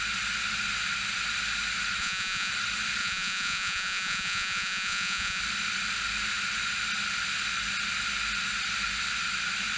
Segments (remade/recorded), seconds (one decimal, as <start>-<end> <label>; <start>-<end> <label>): 0.0-2.0 recorded; 2.0-2.5 remade; 2.5-3.0 recorded; 3.0-5.4 remade; 5.4-9.8 recorded